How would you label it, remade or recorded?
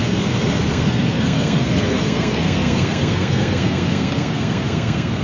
remade